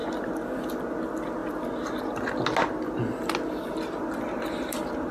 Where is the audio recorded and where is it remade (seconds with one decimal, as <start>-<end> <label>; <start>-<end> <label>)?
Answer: 0.0-5.1 recorded